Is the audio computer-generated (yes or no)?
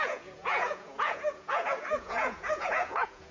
yes